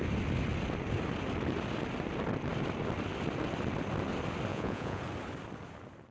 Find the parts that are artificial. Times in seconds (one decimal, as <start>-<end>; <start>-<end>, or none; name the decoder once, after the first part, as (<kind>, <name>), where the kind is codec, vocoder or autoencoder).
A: 4.5-5.0 (vocoder, Vocos)